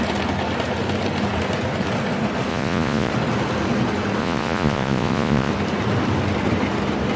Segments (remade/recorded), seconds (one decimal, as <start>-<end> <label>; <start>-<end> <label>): 0.0-2.5 recorded; 2.5-3.1 remade; 3.1-4.2 recorded; 4.2-5.5 remade; 5.5-7.2 recorded